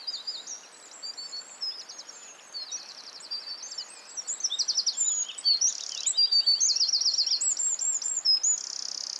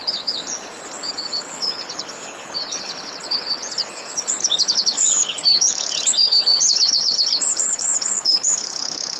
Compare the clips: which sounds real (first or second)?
first